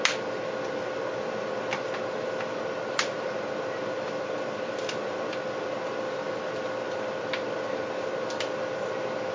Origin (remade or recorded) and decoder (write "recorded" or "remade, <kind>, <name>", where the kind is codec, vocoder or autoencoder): recorded